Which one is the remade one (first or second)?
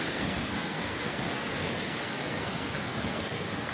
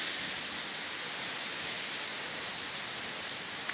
first